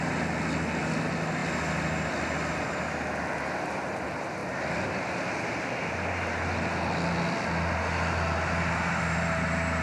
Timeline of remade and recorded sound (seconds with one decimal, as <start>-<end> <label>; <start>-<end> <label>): 0.0-9.8 recorded

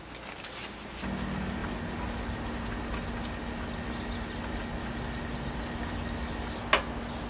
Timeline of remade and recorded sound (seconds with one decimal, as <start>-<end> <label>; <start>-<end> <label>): 0.0-7.3 recorded

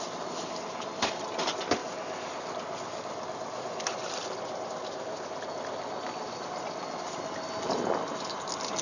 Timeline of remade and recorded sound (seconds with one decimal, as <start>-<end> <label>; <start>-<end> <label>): 0.0-8.8 recorded